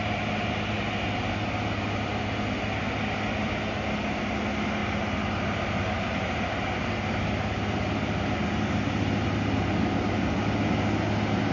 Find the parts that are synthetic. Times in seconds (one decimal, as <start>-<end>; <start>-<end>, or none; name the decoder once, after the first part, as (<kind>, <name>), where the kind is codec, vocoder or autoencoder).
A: none